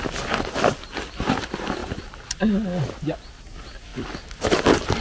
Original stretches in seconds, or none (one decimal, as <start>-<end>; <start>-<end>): 0.0-1.8; 2.4-3.9; 4.4-5.0